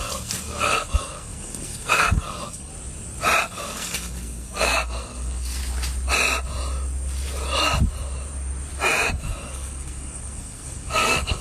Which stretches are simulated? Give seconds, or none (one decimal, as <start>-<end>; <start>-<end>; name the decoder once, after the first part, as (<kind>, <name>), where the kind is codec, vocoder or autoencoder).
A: 0.0-2.7 (codec, SNAC); 3.4-5.6; 9.1-11.4